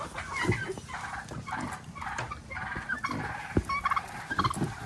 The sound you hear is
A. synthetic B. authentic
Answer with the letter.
B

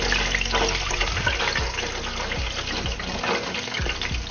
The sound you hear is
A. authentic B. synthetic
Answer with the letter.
A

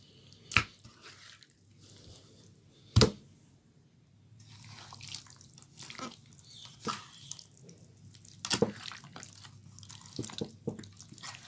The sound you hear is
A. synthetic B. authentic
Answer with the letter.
B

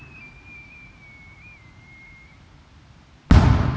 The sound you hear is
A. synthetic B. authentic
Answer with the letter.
B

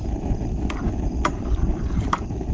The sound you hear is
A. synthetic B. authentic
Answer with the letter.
B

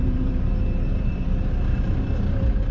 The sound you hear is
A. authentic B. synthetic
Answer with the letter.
B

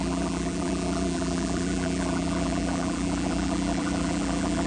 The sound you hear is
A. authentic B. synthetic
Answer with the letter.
B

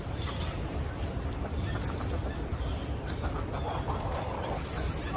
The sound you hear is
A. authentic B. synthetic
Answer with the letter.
B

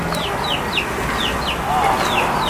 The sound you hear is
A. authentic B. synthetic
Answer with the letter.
A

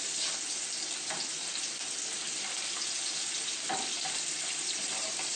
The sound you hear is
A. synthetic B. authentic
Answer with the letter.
B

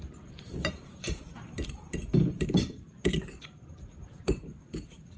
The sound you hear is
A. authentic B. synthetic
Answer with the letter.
B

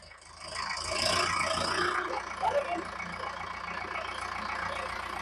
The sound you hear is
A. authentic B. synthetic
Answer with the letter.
A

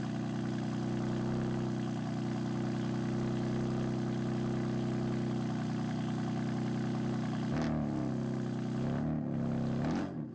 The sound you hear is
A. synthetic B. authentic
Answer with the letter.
B